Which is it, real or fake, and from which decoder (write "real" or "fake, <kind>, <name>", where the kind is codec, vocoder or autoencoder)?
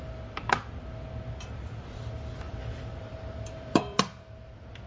fake, vocoder, BigVGAN v2